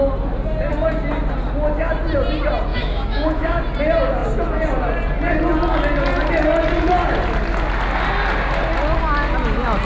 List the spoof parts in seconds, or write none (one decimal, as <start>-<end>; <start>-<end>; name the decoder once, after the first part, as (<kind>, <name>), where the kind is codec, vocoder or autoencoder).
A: 2.7-3.6 (autoencoder, DAC-VAE)

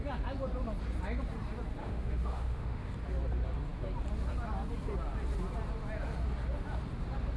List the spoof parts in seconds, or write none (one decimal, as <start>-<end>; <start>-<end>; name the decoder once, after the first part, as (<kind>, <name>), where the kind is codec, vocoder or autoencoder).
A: 1.8-2.9 (autoencoder, DAC-VAE)

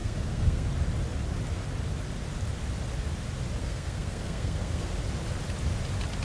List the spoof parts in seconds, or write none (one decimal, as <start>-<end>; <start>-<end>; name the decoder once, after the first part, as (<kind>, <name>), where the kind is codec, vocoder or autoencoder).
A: 0.0-0.7 (codec, SNAC); 3.6-4.9

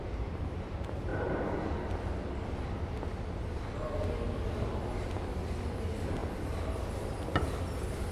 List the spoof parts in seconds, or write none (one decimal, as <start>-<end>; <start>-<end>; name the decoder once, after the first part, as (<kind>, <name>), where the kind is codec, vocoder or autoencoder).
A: 1.1-1.9 (vocoder, BigVGAN v2)

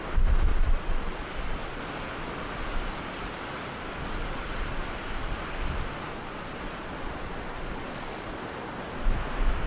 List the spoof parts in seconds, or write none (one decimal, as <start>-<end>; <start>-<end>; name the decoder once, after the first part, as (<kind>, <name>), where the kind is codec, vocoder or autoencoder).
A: 0.5-1.8 (vocoder, Vocos); 6.1-8.4